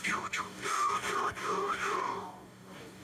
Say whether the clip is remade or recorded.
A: remade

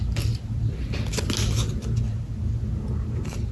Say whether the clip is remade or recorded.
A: recorded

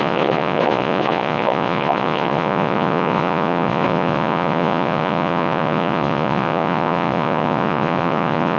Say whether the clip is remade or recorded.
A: remade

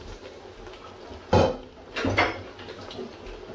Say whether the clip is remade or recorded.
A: recorded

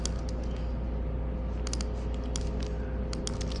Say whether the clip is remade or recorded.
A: recorded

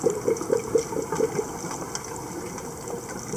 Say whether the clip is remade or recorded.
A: recorded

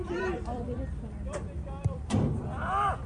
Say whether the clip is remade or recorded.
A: remade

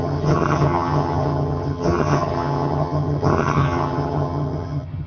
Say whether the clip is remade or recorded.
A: remade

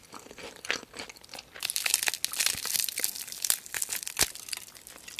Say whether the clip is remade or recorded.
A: recorded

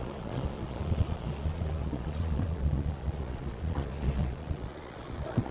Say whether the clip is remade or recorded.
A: remade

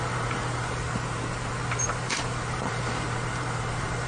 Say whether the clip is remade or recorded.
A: remade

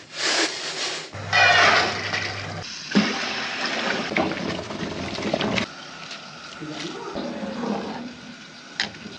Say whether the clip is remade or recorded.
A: recorded